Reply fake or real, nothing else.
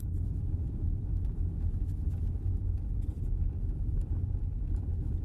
real